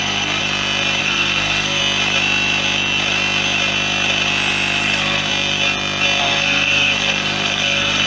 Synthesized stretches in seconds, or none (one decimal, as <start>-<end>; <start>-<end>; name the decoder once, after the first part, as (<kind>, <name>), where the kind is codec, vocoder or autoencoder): 0.0-0.4 (codec, SNAC); 1.0-1.8; 4.8-5.3; 6.2-8.1